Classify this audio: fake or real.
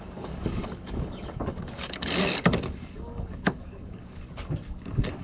fake